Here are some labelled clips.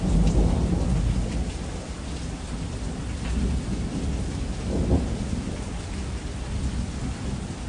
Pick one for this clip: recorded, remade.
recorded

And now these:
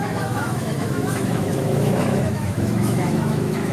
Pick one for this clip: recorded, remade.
remade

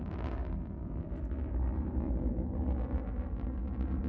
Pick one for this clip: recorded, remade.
recorded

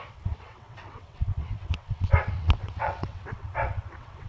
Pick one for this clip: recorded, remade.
remade